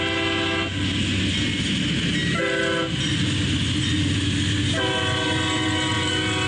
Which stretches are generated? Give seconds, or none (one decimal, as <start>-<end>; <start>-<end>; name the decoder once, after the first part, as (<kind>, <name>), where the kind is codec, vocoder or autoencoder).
none